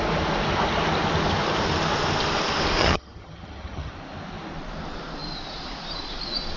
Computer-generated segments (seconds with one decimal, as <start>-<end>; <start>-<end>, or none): 2.8-3.9